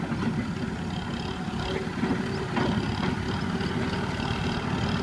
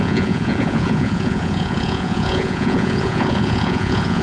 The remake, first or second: second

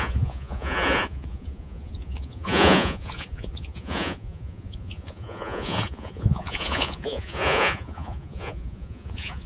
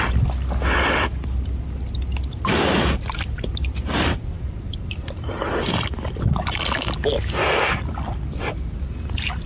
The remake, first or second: first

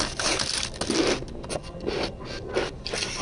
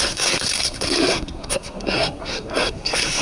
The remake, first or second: second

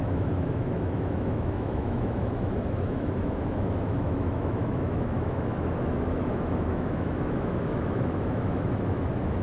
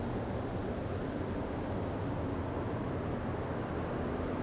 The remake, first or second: first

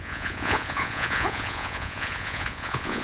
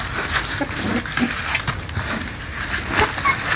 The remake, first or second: first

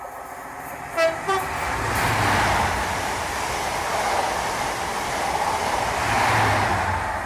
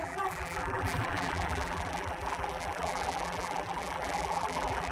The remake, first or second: second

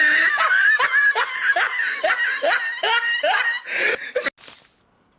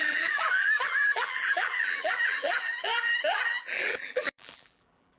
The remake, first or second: second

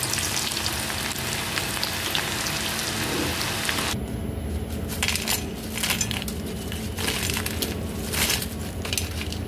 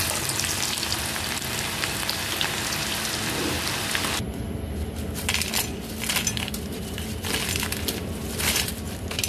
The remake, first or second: second